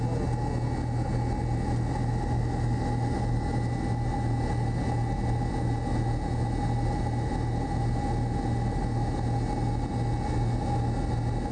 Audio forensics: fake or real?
real